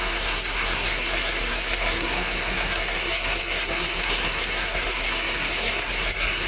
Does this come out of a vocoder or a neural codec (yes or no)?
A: yes